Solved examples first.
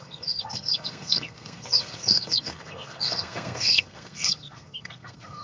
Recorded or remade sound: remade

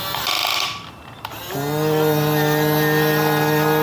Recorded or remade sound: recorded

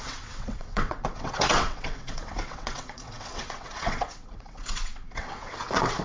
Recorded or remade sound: remade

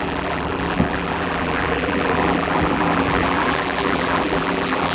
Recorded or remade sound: remade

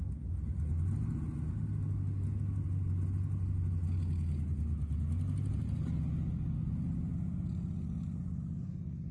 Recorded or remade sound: recorded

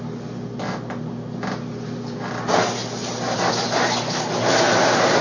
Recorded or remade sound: recorded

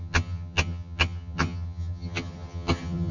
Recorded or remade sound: remade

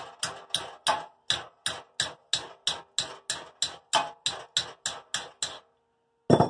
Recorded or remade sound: recorded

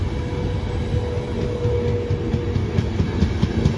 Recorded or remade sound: recorded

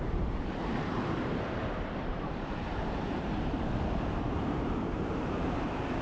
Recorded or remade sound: remade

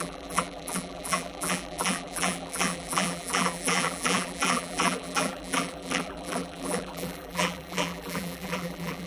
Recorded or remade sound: remade